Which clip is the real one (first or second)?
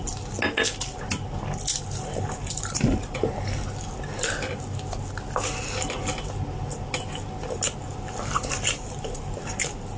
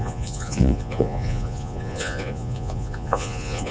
first